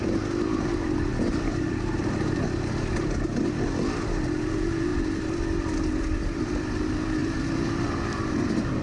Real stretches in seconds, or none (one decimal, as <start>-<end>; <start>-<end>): 0.0-1.1; 2.4-8.8